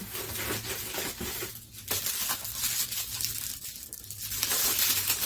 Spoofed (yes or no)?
no